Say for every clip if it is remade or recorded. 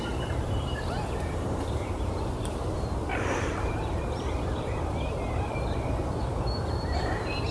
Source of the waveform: remade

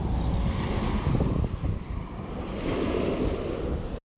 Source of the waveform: recorded